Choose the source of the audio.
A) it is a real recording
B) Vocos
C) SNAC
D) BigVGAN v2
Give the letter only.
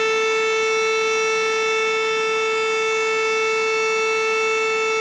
A